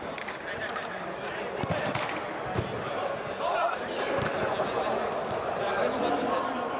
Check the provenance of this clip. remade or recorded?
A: recorded